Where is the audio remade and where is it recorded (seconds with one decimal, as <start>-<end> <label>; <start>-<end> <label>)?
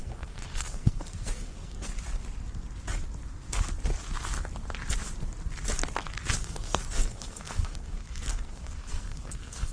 0.0-1.9 remade; 1.9-6.3 recorded; 6.3-9.7 remade